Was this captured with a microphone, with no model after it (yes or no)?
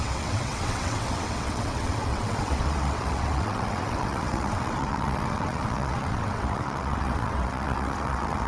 no